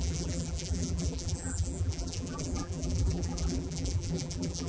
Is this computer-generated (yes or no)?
yes